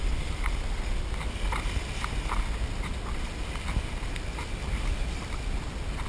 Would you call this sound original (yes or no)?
yes